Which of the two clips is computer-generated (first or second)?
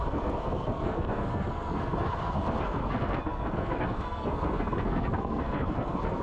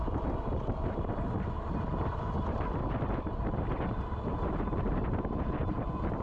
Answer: first